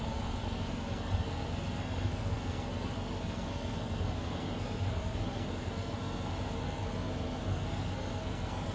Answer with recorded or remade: remade